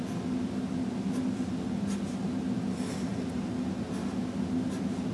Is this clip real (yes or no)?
yes